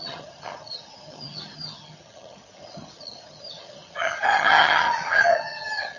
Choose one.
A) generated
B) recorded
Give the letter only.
A